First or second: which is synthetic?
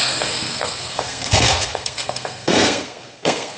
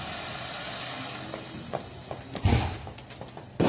first